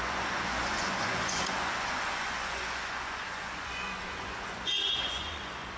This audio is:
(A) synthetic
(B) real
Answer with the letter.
A